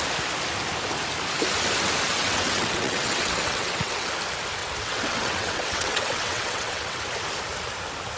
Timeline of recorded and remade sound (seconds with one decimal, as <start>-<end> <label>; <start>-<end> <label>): 0.0-2.1 recorded; 2.1-4.1 remade; 4.1-4.6 recorded; 4.6-7.0 remade; 7.0-8.2 recorded